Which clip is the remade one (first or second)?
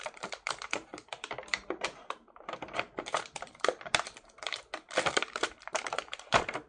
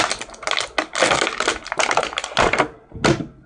first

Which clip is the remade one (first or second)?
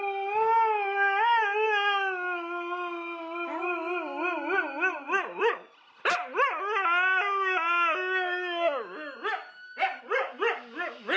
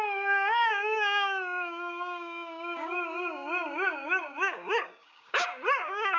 second